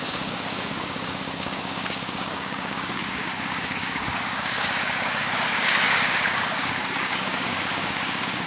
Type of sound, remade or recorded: remade